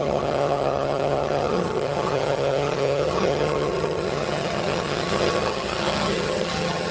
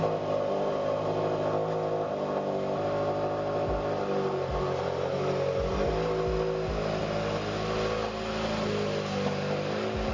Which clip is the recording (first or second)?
second